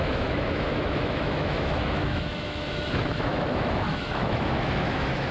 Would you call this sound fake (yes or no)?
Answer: yes